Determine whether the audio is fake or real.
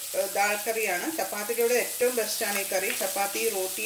real